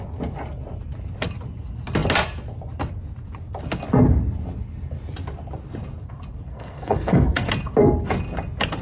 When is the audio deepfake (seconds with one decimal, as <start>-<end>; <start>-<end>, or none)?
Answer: 6.5-7.5

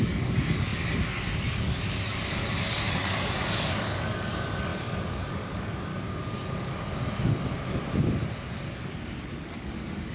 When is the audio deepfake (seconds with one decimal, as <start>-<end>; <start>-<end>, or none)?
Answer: 0.0-5.9; 8.7-10.1

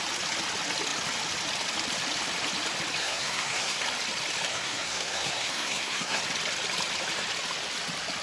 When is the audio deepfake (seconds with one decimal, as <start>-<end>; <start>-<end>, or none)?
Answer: 3.0-3.8; 4.5-6.2

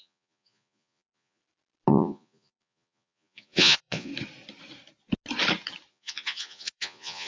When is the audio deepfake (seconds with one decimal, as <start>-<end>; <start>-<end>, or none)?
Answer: 0.0-1.4; 1.9-4.1; 5.9-7.3

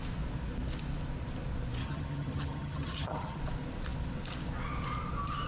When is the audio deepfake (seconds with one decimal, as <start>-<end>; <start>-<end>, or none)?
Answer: 1.8-3.4

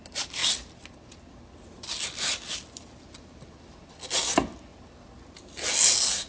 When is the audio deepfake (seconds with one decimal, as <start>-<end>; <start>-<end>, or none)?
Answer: none